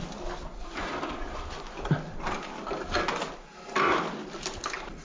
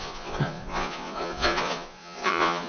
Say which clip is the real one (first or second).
first